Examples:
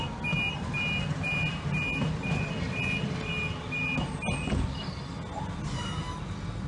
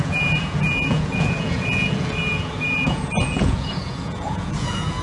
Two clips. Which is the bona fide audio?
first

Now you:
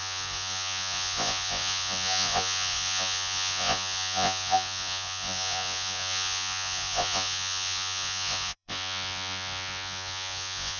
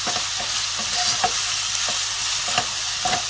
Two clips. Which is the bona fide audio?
second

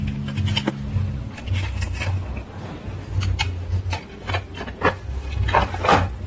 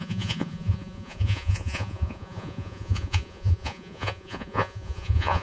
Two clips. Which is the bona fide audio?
first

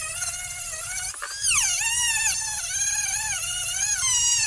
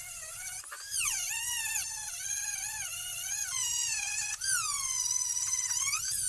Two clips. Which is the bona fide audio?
first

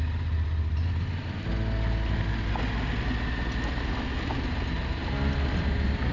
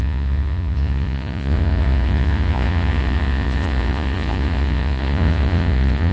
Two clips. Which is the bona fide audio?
first